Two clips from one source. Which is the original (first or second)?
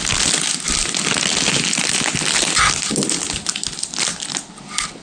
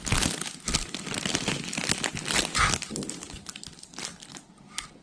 first